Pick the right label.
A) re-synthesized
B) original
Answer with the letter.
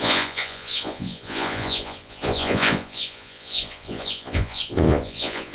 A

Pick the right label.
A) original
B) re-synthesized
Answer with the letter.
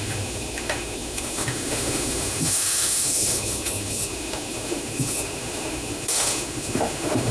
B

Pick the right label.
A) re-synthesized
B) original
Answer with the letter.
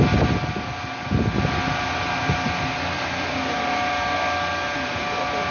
B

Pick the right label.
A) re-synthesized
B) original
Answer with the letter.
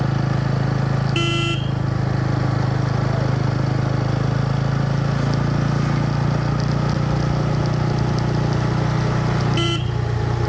B